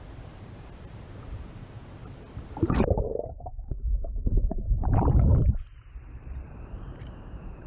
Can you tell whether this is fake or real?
fake